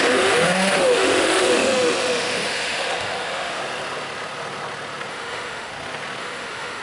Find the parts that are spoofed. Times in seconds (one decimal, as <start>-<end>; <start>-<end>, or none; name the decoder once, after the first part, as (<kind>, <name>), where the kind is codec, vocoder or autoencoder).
0.0-3.6 (autoencoder, DAC-VAE); 5.1-5.7; 6.2-6.8